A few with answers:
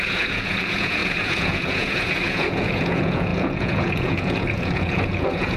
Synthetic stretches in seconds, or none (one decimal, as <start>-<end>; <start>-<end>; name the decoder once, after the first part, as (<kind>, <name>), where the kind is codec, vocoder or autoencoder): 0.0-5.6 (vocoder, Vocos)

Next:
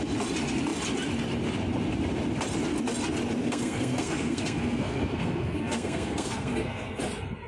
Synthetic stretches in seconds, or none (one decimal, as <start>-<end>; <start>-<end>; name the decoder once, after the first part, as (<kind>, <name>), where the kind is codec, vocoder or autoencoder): 3.4-7.0 (codec, SNAC)

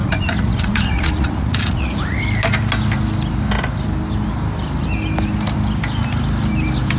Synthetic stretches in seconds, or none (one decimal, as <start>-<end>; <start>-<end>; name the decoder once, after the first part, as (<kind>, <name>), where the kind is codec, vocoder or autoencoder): 0.0-2.2 (vocoder, Vocos)